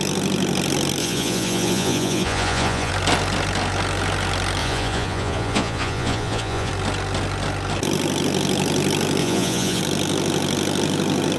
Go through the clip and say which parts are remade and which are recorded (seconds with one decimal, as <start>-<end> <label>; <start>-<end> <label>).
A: 0.0-1.0 recorded; 1.0-2.9 remade; 2.9-4.6 recorded; 4.6-6.7 remade; 6.7-9.2 recorded; 9.2-9.8 remade; 9.8-11.4 recorded